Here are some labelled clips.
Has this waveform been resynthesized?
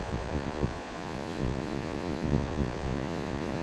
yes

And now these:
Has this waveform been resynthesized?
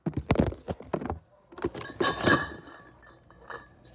no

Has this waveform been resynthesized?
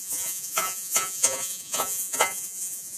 yes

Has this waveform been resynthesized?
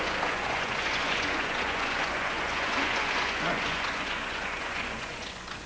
yes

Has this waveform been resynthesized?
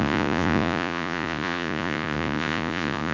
yes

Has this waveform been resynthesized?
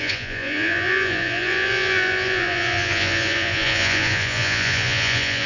yes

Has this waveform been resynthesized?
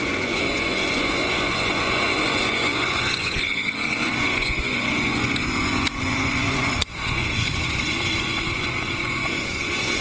yes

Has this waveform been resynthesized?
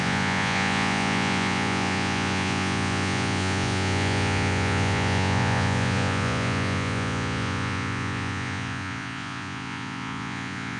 yes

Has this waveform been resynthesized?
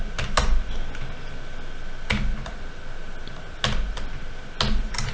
no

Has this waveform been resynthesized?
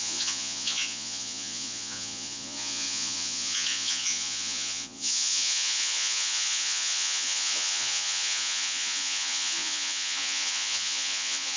yes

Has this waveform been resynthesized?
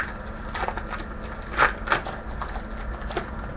no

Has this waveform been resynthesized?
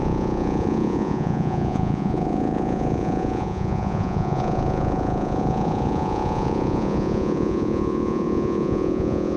yes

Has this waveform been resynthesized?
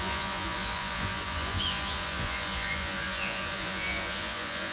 yes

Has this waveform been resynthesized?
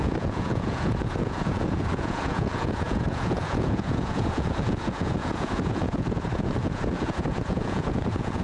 yes